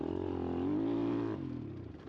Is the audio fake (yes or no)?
no